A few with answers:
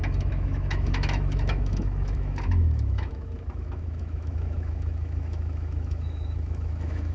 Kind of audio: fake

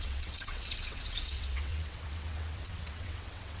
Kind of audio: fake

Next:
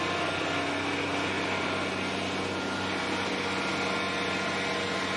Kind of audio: real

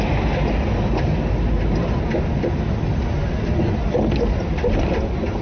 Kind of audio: real